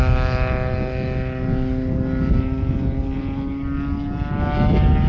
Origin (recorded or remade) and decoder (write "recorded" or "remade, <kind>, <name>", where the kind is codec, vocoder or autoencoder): recorded